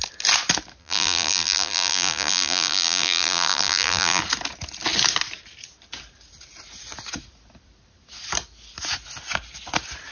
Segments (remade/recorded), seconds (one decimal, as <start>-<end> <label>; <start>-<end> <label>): 0.0-0.8 recorded; 0.8-4.2 remade; 4.2-10.1 recorded